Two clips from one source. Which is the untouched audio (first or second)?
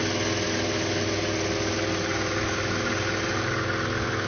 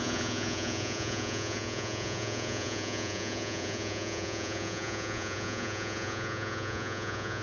first